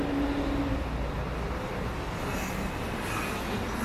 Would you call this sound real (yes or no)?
yes